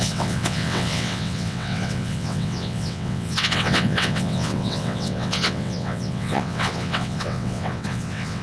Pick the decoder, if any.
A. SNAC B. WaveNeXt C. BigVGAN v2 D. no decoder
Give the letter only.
B